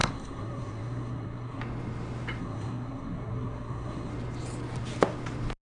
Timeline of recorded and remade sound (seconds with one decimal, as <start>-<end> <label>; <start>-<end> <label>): 0.0-1.6 remade; 1.6-2.4 recorded; 2.4-4.1 remade; 4.1-5.7 recorded